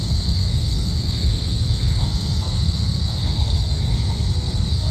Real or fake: fake